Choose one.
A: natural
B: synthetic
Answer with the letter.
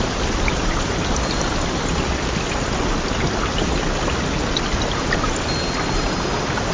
A